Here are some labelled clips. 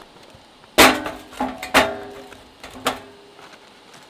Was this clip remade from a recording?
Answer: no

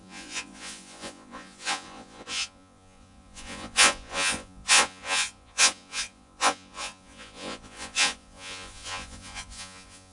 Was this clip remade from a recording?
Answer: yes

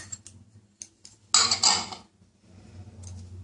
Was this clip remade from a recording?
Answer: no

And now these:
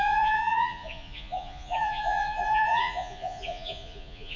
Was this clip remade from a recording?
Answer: yes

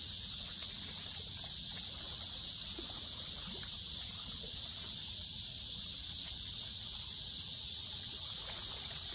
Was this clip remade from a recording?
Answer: yes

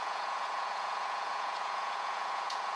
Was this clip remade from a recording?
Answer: yes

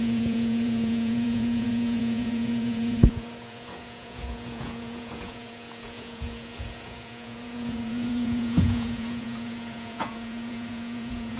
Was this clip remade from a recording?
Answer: yes